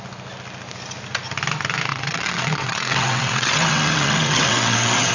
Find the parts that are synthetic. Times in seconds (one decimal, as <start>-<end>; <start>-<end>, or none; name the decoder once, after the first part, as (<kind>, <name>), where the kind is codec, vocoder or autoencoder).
1.9-5.1 (vocoder, WaveNeXt)